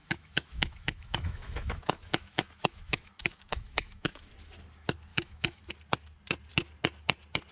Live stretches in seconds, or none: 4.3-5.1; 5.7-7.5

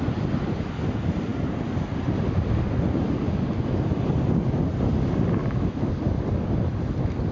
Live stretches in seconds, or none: 0.0-5.4; 5.9-7.3

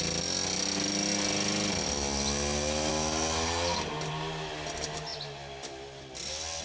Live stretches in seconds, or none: 0.0-6.6

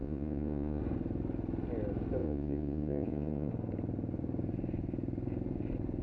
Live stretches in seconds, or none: 0.8-2.2; 3.5-6.0

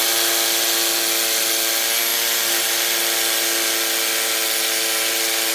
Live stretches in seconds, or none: 0.0-5.5

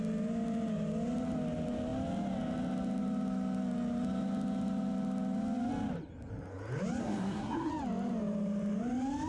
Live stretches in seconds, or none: 0.0-7.0; 7.7-9.3